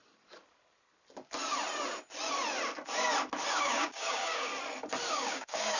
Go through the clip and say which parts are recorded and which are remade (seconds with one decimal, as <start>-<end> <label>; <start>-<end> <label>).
0.0-3.5 recorded; 3.5-4.5 remade; 4.5-5.1 recorded; 5.1-5.8 remade